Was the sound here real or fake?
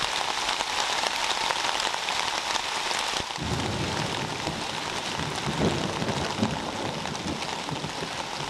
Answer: real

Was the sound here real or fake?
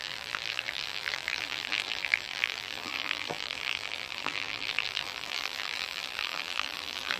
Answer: fake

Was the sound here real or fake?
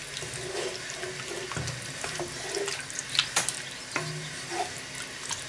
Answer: real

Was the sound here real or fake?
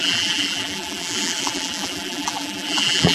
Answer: fake